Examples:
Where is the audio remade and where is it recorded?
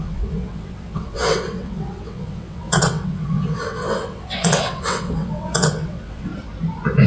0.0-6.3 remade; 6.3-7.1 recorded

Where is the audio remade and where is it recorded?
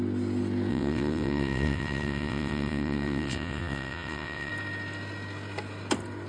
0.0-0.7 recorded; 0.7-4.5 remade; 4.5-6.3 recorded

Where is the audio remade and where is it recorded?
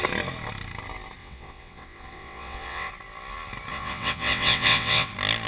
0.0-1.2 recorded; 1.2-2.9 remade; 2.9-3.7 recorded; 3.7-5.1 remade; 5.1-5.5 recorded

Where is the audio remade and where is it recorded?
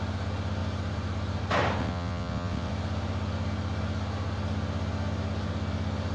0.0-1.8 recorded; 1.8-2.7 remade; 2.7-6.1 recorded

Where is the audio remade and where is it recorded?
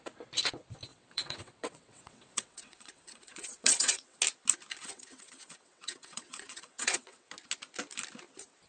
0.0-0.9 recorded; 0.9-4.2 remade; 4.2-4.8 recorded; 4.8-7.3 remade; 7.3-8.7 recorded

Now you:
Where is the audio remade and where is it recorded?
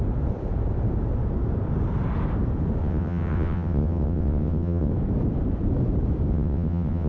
0.0-2.8 recorded; 2.8-4.9 remade; 4.9-6.3 recorded; 6.3-7.1 remade